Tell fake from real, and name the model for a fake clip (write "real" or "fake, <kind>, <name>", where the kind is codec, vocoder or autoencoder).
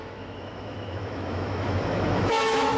fake, autoencoder, DAC-VAE